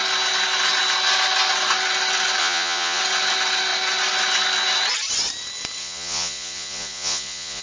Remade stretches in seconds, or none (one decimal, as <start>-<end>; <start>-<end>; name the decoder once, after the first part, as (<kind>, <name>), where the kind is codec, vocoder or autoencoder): 2.4-3.0 (vocoder, Vocos); 5.8-7.6